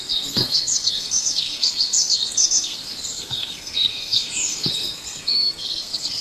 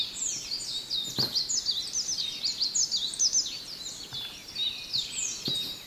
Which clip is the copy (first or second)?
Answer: first